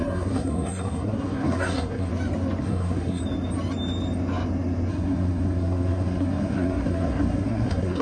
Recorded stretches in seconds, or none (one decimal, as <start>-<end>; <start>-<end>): 2.1-2.6; 3.2-4.9

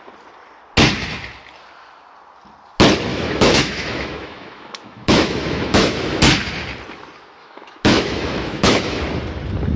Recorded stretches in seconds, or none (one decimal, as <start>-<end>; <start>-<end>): 0.0-3.1; 6.2-7.4; 9.0-9.8

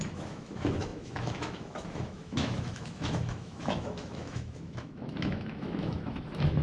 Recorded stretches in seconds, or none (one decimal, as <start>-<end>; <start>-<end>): none